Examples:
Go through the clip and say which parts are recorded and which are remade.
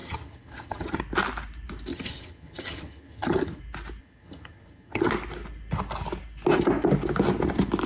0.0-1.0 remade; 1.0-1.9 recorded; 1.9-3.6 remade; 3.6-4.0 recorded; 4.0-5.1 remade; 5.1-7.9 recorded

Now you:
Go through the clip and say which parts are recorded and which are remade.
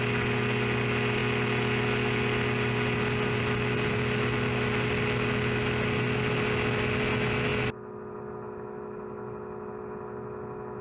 0.0-10.8 recorded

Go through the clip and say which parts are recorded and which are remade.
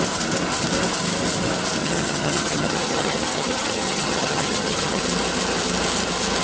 0.0-1.8 recorded; 1.8-5.0 remade; 5.0-6.4 recorded